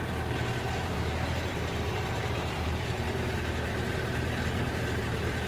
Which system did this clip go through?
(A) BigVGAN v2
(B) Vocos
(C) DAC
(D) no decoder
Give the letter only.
A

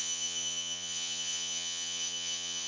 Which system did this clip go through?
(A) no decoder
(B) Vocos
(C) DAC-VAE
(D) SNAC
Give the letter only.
B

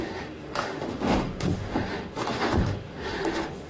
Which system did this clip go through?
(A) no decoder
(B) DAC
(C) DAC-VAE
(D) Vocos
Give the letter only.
C